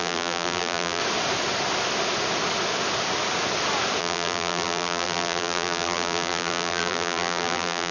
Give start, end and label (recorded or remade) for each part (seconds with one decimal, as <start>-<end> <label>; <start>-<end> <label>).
0.0-1.0 remade; 1.0-4.0 recorded; 4.0-7.9 remade